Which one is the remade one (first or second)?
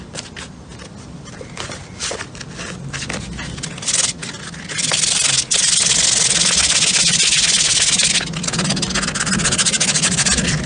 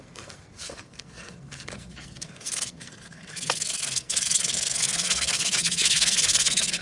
second